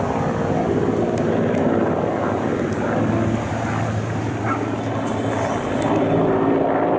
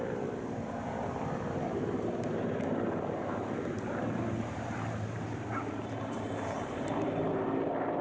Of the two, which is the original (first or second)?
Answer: first